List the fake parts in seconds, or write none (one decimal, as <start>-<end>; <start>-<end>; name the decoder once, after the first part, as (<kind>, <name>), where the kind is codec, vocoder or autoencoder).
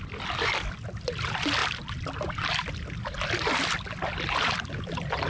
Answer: none